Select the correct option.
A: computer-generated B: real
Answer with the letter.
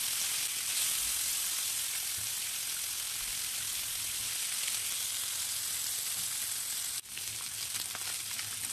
B